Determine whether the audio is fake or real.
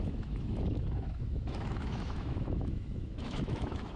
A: fake